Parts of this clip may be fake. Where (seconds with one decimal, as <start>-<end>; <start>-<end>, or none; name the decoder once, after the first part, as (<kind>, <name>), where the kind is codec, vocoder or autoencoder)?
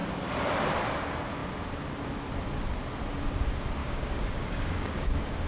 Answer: 3.8-5.1 (codec, DAC)